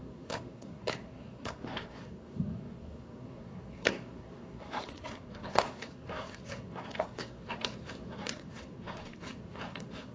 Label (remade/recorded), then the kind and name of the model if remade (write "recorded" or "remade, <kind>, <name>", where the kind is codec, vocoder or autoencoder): remade, codec, SNAC